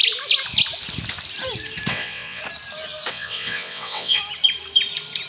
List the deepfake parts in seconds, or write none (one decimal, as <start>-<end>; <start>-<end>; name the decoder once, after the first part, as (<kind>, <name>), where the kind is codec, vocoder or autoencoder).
1.9-2.4 (vocoder, WaveNeXt); 3.1-4.2